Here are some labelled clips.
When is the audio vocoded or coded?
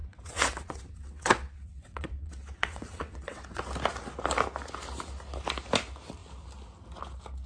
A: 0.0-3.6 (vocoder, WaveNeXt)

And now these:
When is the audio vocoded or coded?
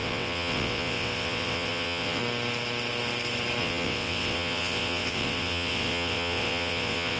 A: 0.0-2.2 (vocoder, WaveNeXt); 3.6-7.2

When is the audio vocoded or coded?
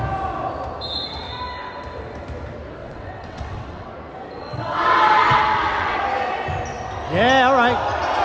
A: 2.8-3.9 (vocoder, WaveNeXt); 4.4-6.0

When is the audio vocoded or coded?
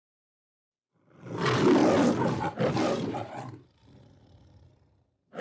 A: none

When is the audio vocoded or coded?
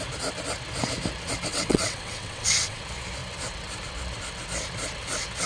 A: 1.5-2.8 (vocoder, WaveNeXt)